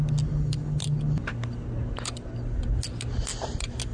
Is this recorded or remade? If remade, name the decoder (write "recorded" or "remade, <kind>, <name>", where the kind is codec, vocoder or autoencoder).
recorded